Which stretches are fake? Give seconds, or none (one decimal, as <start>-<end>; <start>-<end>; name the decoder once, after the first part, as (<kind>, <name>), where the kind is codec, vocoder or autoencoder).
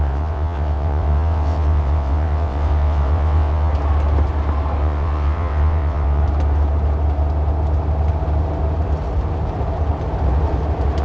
0.0-3.7 (vocoder, WaveNeXt); 4.8-6.2